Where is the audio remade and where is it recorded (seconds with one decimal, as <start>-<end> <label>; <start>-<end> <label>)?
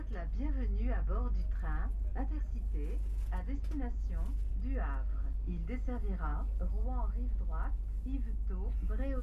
0.0-9.2 recorded